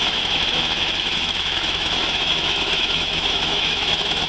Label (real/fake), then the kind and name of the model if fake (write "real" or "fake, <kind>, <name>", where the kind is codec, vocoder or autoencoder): fake, autoencoder, DAC-VAE